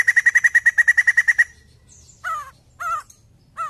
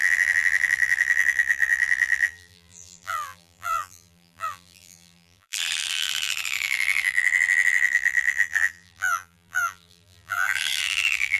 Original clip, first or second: first